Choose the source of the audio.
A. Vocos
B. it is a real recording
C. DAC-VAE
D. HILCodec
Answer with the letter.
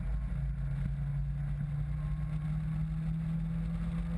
B